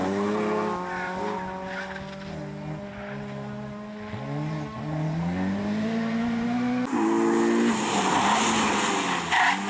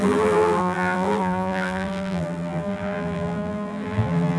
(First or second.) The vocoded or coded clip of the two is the second